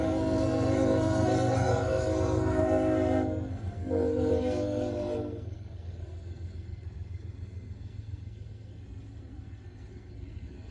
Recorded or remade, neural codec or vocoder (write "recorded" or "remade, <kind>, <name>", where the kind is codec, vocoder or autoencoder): remade, codec, SNAC